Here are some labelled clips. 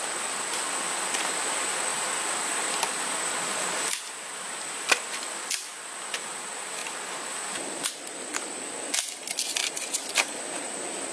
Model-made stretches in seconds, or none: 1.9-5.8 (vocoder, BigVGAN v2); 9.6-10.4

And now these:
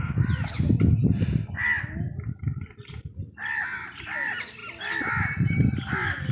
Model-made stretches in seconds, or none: none

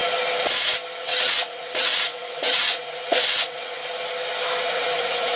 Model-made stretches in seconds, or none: 1.0-3.8 (vocoder, WaveNeXt); 4.7-5.4

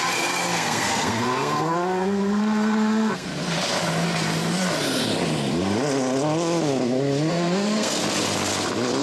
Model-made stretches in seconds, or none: 0.0-3.3 (codec, SNAC); 7.3-8.0

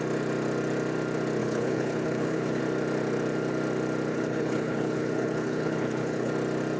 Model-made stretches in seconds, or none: 1.4-2.6 (codec, HILCodec); 4.1-6.3

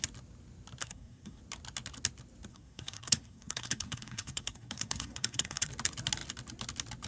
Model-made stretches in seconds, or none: 0.8-1.4 (codec, SNAC); 2.5-5.7

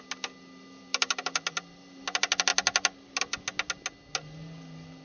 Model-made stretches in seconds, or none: none

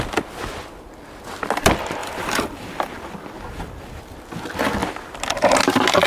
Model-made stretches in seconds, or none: 2.0-4.1 (vocoder, BigVGAN v2)